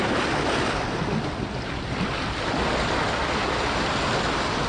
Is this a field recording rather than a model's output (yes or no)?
yes